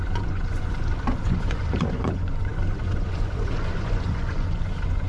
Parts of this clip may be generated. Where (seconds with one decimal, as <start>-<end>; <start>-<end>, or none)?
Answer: 0.0-5.1